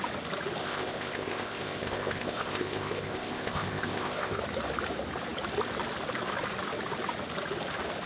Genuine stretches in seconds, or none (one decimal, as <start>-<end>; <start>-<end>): 0.0-0.6; 4.4-8.1